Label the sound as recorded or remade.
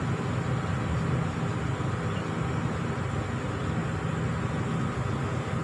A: recorded